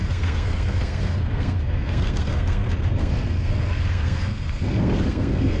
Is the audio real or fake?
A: fake